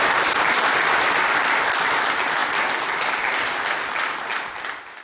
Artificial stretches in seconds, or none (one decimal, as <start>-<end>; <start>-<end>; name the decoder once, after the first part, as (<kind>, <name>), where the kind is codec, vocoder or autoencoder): none